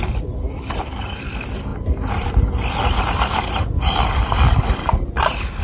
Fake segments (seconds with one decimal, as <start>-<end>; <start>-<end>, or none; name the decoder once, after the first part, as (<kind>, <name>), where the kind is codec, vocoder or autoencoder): 1.7-2.3 (vocoder, BigVGAN v2)